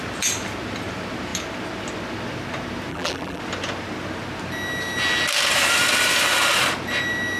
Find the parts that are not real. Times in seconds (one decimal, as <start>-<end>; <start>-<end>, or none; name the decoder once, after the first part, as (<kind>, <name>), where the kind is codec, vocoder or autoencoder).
2.9-3.4 (vocoder, BigVGAN v2)